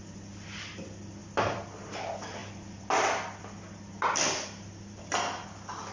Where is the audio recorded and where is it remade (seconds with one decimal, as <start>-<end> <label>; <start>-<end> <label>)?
0.0-5.9 recorded